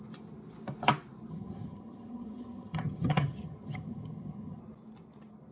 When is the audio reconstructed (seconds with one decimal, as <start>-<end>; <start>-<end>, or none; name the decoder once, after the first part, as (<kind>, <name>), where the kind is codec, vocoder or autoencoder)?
1.3-4.6 (vocoder, HiFi-GAN)